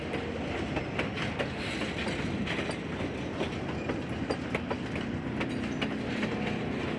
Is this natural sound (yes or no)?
yes